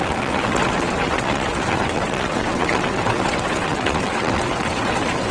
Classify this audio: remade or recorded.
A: remade